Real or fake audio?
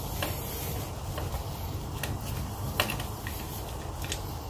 real